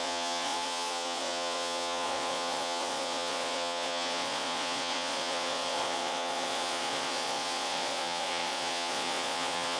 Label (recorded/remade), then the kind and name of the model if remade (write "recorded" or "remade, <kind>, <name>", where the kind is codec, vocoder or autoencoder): remade, vocoder, Vocos